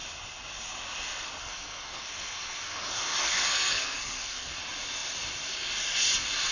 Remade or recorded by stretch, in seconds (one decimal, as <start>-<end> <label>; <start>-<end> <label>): 0.0-1.4 recorded; 1.4-4.6 remade; 4.6-6.5 recorded